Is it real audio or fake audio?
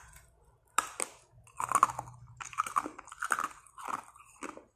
real